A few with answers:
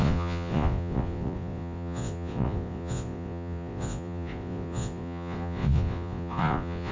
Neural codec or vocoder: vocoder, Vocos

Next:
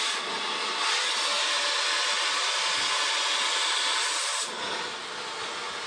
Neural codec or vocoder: none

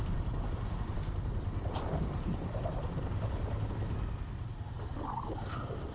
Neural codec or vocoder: none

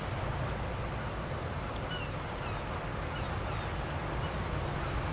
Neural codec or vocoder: none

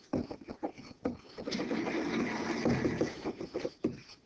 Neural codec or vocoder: none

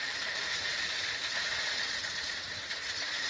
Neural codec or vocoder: vocoder, Vocos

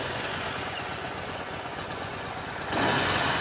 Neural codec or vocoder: vocoder, Vocos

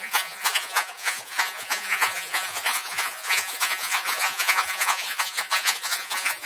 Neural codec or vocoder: vocoder, Vocos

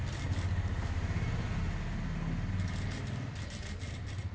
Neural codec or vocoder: none